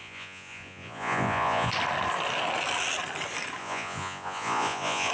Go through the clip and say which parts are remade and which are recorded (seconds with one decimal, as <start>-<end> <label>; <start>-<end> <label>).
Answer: 0.0-1.7 remade; 1.7-3.6 recorded; 3.6-5.1 remade